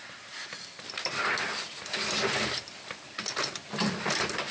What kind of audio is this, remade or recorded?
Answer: recorded